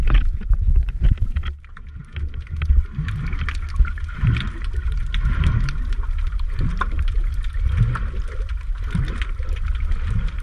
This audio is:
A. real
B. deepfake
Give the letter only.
A